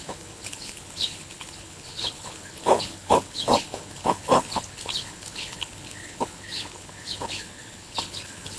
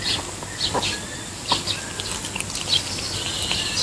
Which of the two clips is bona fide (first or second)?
second